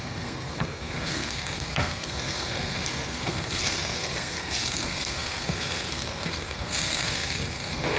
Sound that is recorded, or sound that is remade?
remade